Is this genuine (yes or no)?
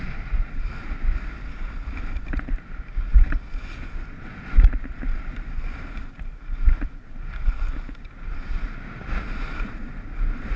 yes